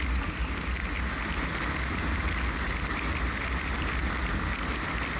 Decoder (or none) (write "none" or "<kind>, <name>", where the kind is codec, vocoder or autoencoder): none